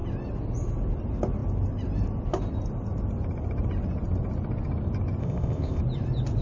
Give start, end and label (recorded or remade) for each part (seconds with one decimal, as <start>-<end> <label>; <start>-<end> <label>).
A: 0.0-5.2 recorded; 5.2-5.8 remade; 5.8-6.4 recorded